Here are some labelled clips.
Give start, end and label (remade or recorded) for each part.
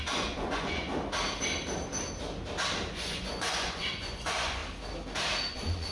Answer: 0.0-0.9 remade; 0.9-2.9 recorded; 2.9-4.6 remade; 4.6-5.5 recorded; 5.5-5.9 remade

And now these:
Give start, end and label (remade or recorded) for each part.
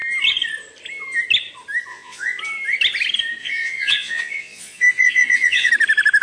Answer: 0.0-1.9 recorded; 1.9-2.4 remade; 2.4-3.4 recorded; 3.4-5.7 remade; 5.7-6.2 recorded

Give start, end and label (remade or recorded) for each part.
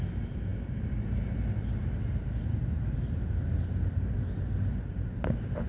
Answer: 0.0-5.7 recorded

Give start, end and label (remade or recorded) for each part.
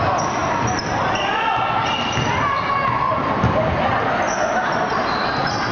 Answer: 0.0-5.7 recorded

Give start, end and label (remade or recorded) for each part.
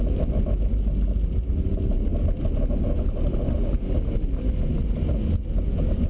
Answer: 0.0-6.1 recorded